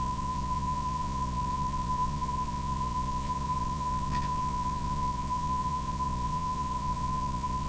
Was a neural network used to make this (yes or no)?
yes